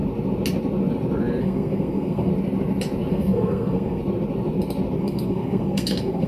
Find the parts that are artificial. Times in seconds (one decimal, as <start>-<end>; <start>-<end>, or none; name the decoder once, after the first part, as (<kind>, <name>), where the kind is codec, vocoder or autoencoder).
1.4-2.3 (codec, SNAC); 3.1-4.0; 5.0-6.3